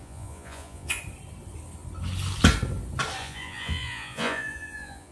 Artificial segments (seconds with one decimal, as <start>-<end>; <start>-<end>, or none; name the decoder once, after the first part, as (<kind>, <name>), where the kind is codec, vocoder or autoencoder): 0.0-1.0 (vocoder, Vocos); 3.2-5.1